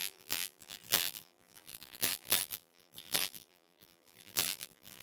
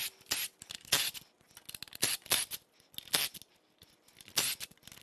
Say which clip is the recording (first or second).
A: second